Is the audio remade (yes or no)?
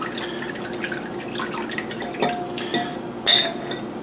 no